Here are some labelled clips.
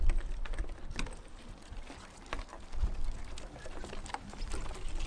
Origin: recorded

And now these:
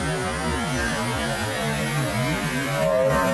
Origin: recorded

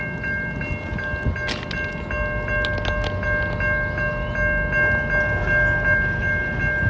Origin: recorded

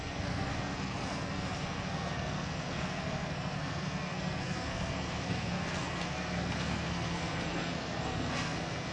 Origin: remade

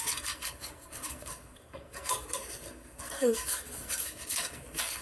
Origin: remade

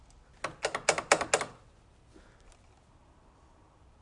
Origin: recorded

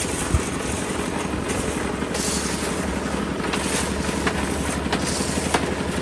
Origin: recorded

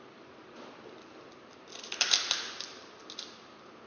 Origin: recorded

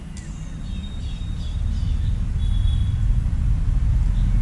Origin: recorded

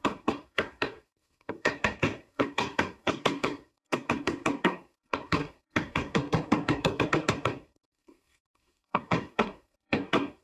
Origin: remade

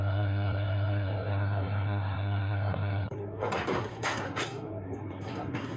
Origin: remade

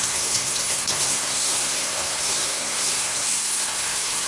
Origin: remade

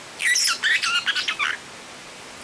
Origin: recorded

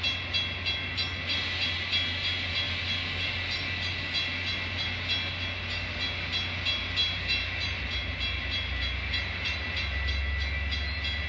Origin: recorded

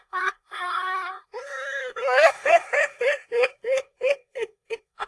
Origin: remade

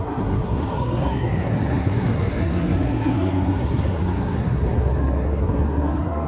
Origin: remade